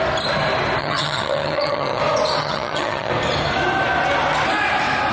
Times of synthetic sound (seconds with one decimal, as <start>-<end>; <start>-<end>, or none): 0.8-2.0; 2.4-3.1